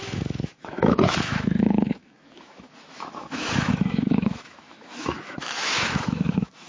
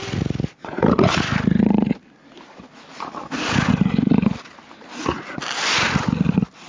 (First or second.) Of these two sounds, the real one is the second